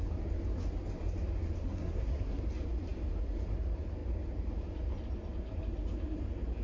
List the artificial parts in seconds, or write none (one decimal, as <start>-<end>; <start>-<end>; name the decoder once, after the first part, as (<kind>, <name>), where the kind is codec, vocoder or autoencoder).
1.6-2.4 (codec, SNAC)